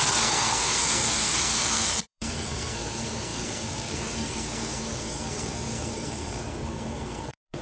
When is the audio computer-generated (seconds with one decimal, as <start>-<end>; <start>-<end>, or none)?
0.0-7.6